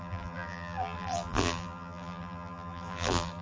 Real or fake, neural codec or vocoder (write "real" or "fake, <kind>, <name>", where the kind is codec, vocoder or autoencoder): fake, vocoder, BigVGAN v2